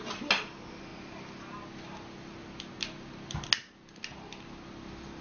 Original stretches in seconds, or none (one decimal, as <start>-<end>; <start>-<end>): 0.0-5.2